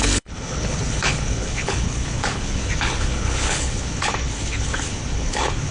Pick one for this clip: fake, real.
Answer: fake